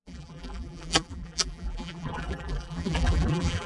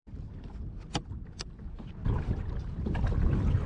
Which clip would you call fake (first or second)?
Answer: first